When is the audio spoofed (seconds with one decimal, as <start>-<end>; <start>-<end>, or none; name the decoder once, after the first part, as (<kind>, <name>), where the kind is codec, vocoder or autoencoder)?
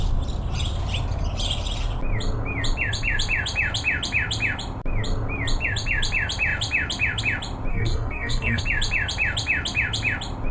7.7-8.6 (codec, SNAC)